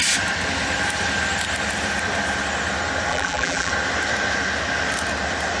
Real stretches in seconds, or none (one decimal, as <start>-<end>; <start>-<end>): 0.0-3.1; 3.7-5.6